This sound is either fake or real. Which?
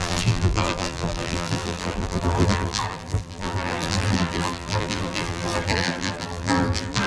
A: fake